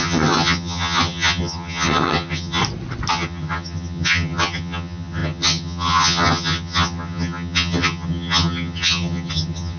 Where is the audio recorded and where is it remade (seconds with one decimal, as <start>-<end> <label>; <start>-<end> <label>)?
0.0-2.6 remade; 2.6-3.1 recorded; 3.1-9.8 remade

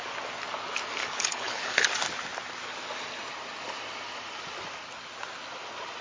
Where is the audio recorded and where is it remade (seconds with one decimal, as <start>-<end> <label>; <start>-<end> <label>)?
0.0-1.0 recorded; 1.0-1.8 remade; 1.8-6.0 recorded

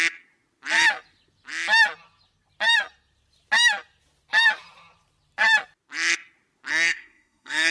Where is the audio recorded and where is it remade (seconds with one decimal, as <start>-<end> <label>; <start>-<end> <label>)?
0.0-6.7 recorded; 6.7-7.7 remade